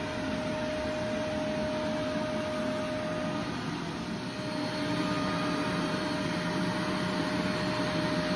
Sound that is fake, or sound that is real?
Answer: real